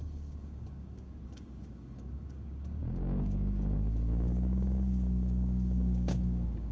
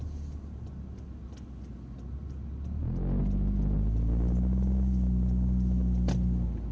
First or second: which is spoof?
first